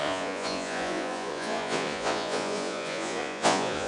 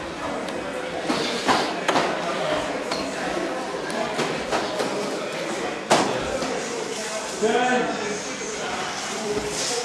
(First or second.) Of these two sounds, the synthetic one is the first